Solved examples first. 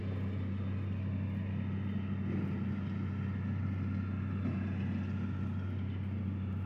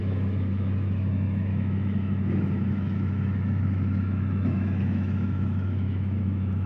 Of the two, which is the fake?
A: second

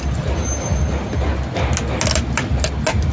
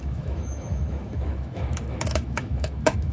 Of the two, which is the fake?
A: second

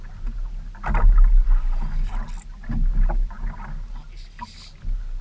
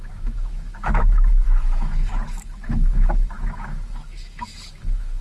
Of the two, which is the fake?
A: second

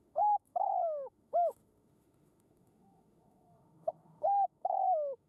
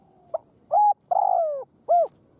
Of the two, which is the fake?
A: first